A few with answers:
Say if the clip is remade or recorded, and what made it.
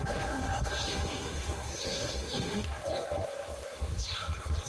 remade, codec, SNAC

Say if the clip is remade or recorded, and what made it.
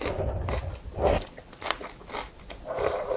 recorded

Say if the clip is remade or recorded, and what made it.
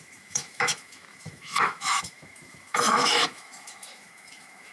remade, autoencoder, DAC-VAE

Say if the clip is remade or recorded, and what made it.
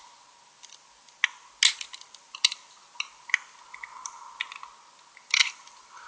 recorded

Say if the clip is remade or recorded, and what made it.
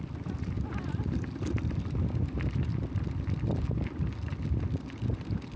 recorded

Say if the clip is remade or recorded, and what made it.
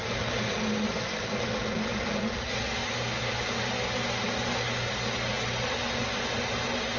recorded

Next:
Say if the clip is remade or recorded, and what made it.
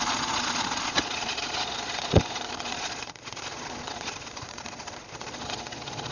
remade, vocoder, Vocos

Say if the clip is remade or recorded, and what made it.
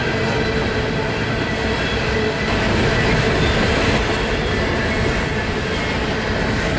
recorded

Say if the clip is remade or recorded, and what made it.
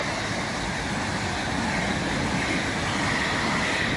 recorded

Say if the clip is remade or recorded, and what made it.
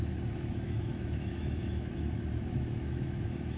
remade, autoencoder, DAC-VAE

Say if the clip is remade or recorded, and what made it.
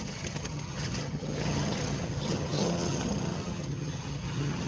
remade, vocoder, HiFi-GAN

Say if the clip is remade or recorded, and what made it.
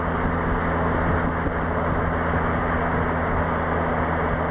recorded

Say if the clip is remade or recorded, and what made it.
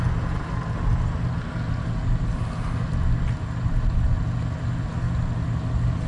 recorded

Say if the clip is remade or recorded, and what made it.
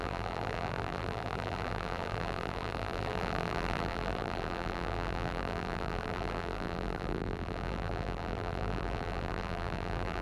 remade, vocoder, BigVGAN v2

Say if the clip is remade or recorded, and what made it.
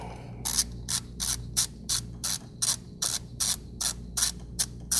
recorded